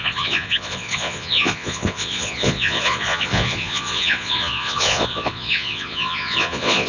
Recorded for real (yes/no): no